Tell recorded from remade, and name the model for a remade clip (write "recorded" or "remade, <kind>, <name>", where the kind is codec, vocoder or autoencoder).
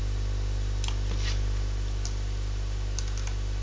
recorded